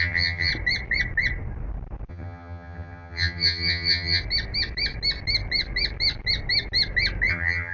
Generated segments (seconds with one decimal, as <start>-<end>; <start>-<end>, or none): 0.0-0.5; 2.1-4.2; 7.3-7.7